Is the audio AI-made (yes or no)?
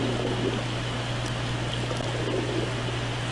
no